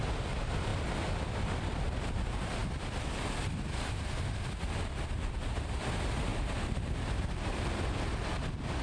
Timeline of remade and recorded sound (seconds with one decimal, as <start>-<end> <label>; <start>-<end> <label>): 0.0-2.6 recorded; 2.6-3.5 remade; 3.5-6.3 recorded; 6.3-8.0 remade; 8.0-8.8 recorded